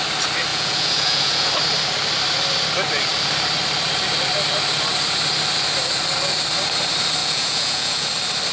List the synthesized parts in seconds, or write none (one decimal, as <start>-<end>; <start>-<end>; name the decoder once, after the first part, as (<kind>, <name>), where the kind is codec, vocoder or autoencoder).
0.5-1.5 (vocoder, Vocos); 7.2-8.1